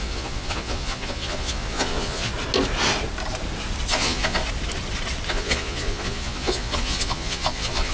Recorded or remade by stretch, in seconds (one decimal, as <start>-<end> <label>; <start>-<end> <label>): 0.0-2.3 remade; 2.3-3.9 recorded; 3.9-4.4 remade; 4.4-5.3 recorded; 5.3-7.9 remade